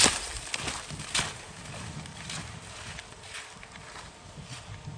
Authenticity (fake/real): real